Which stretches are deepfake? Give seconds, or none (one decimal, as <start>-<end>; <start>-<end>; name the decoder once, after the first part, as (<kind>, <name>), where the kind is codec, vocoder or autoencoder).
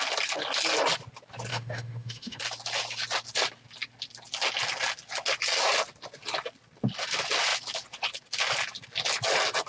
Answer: 1.5-2.4 (autoencoder, DAC-VAE)